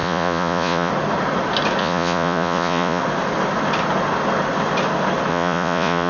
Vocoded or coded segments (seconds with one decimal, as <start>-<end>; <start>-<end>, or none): 0.0-0.9; 1.8-3.0; 5.3-6.1